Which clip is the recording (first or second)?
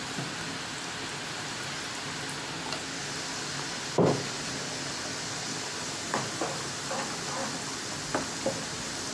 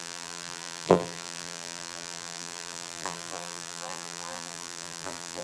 first